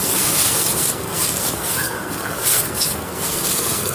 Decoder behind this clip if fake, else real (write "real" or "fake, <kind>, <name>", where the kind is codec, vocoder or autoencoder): fake, codec, SNAC